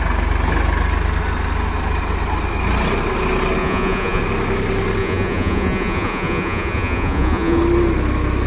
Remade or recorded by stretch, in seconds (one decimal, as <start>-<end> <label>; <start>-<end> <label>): 0.0-3.6 recorded; 3.6-4.2 remade; 4.2-5.0 recorded; 5.0-7.6 remade; 7.6-8.5 recorded